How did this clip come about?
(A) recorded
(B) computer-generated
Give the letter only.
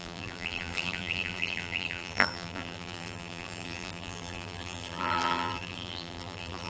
B